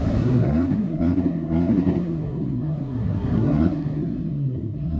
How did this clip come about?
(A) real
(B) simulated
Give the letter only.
B